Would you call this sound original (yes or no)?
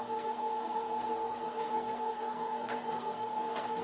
no